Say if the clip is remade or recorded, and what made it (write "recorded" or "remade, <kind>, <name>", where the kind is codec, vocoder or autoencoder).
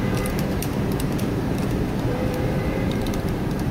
remade, vocoder, BigVGAN v2